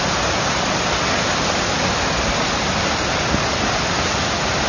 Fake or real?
real